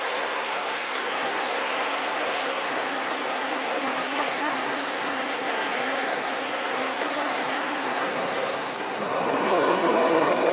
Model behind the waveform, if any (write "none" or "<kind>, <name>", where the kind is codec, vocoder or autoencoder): codec, SNAC